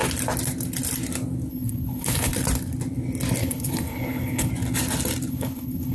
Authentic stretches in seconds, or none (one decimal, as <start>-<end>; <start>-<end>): 0.0-1.5; 2.3-3.4; 4.5-5.3